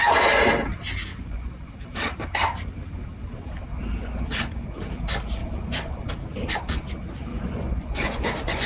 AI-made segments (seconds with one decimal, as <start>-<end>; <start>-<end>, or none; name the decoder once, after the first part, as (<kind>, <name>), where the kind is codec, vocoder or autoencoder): 1.1-1.7 (vocoder, Vocos); 5.4-6.1; 7.3-8.7

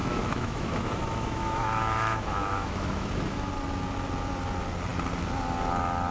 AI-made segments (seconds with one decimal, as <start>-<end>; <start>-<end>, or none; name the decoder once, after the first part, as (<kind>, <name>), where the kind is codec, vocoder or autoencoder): 0.0-3.5 (autoencoder, DAC-VAE)

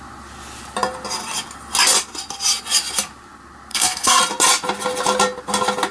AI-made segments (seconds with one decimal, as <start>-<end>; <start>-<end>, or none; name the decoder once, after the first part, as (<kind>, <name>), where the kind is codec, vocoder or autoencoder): 3.7-4.2 (codec, SNAC)

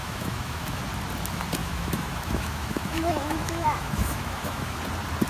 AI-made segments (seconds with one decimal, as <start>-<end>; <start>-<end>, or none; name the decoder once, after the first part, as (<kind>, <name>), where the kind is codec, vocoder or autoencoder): 0.0-0.8 (autoencoder, DAC-VAE); 1.6-4.8

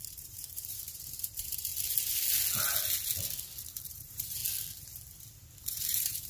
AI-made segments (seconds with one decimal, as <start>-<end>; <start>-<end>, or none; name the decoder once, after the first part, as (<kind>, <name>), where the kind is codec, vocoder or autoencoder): 0.0-1.7 (vocoder, BigVGAN v2); 3.8-4.4; 5.7-6.3

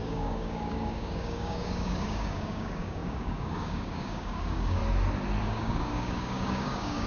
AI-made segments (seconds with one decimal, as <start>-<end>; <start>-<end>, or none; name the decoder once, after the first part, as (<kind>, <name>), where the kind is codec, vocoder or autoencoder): 0.0-4.8 (codec, DAC); 5.4-7.1